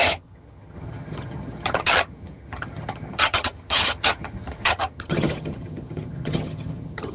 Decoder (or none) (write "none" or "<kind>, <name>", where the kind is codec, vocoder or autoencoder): vocoder, HiFi-GAN